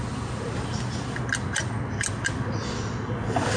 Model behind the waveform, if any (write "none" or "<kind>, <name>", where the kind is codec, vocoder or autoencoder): none